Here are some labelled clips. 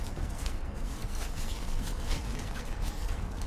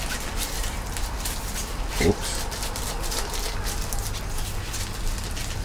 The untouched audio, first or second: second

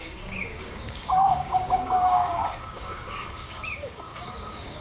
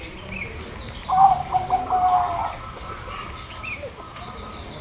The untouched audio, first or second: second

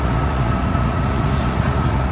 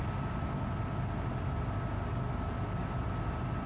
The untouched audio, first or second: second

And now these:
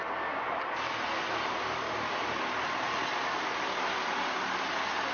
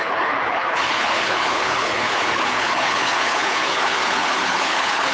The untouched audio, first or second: first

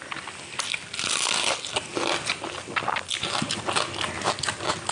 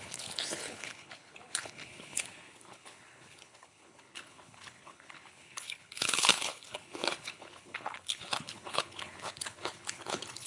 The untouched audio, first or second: first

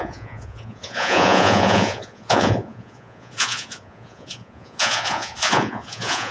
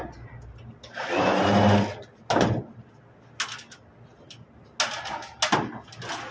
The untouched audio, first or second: second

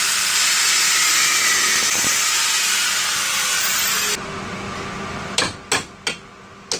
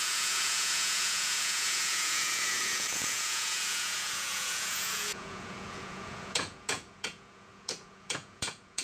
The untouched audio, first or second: first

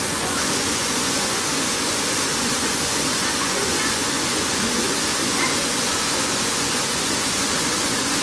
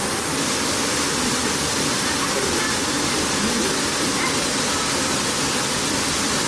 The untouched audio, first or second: second